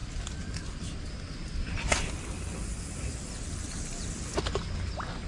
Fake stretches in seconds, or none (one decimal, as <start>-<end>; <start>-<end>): none